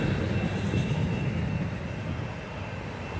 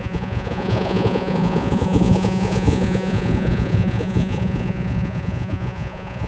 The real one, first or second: first